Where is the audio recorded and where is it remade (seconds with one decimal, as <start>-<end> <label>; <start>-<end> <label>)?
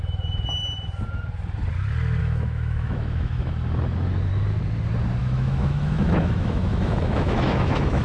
0.0-2.2 recorded; 2.2-3.5 remade; 3.5-5.2 recorded; 5.2-8.0 remade